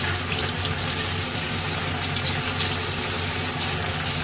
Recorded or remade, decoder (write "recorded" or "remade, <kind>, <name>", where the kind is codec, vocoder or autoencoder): recorded